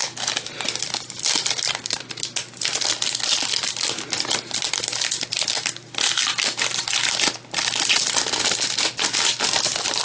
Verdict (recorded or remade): recorded